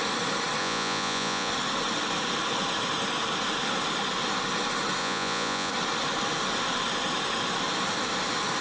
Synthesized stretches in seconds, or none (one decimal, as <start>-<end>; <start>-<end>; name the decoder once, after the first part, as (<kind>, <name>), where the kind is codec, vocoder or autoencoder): 0.6-1.5 (vocoder, Vocos); 5.0-5.7